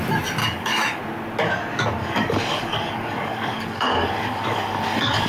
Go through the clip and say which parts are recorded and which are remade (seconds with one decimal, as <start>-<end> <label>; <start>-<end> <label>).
0.0-0.4 recorded; 0.4-1.0 remade; 1.0-2.0 recorded; 2.0-5.3 remade